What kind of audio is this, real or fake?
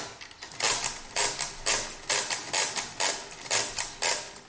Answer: real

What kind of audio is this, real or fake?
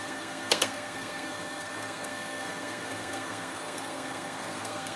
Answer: fake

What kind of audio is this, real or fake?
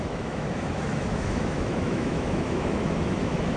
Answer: fake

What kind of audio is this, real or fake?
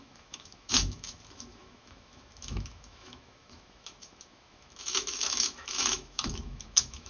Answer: fake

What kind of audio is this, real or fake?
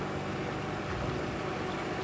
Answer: real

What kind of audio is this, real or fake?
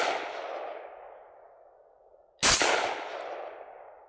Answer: real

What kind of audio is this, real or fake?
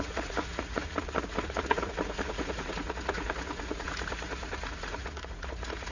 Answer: fake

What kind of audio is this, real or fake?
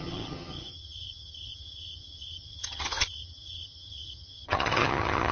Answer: fake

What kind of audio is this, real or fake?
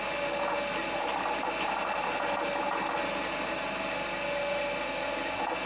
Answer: real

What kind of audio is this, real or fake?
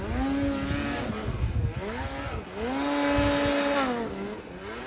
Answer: real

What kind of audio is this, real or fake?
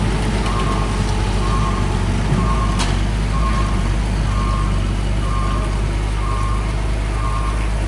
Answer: real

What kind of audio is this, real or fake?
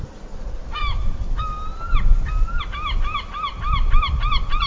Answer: real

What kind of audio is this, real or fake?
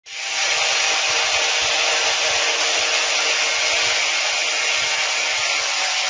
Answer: real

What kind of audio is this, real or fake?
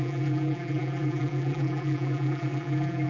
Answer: fake